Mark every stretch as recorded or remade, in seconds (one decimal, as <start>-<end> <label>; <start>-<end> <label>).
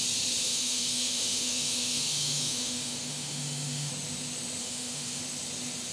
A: 0.0-0.4 recorded; 0.4-3.9 remade; 3.9-4.6 recorded; 4.6-5.2 remade; 5.2-5.9 recorded